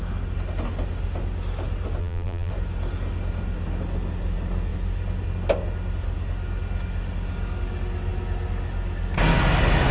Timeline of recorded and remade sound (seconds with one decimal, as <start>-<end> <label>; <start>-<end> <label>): 0.0-2.0 recorded; 2.0-2.5 remade; 2.5-9.9 recorded